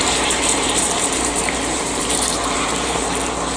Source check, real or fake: fake